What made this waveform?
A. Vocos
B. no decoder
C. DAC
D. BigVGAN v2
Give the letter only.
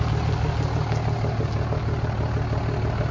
B